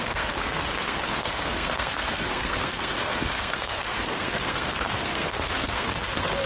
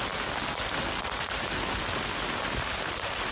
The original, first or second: second